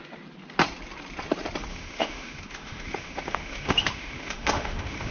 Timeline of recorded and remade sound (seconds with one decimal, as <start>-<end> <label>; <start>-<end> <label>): 0.0-1.7 recorded; 1.7-5.1 remade